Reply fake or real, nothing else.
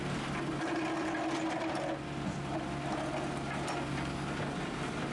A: real